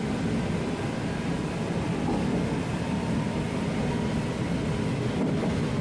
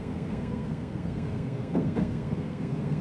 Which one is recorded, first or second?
first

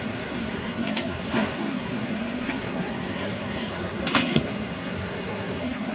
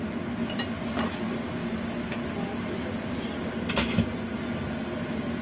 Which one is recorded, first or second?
second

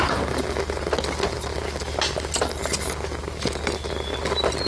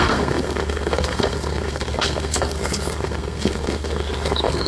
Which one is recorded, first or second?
first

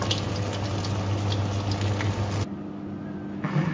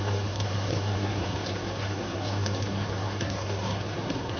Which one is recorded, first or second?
first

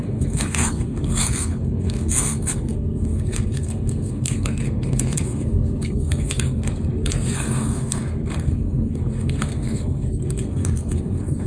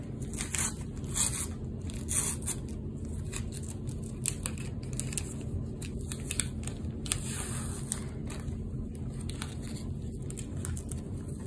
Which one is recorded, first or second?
second